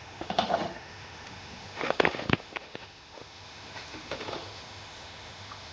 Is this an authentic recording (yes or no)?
no